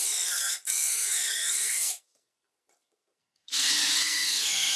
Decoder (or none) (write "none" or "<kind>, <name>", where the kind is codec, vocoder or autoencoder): codec, SNAC